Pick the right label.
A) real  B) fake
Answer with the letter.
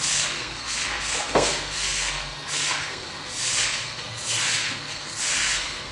B